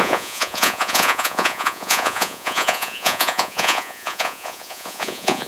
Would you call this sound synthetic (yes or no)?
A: yes